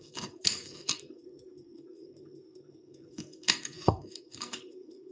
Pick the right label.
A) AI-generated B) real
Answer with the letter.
A